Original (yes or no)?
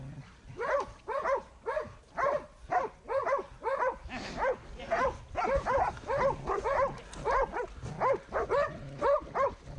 yes